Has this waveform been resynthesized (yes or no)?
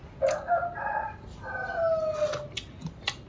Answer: no